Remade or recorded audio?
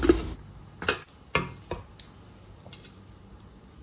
recorded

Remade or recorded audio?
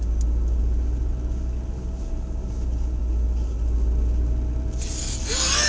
recorded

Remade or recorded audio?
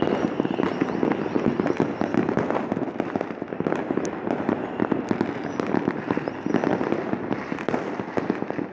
recorded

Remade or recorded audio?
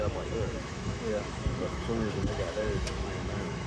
remade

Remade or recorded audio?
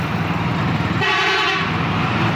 recorded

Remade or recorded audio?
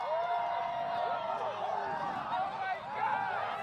recorded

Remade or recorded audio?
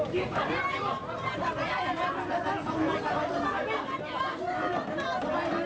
recorded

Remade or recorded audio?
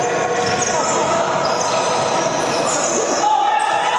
recorded